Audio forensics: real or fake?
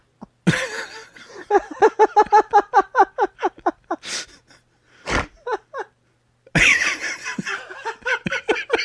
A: real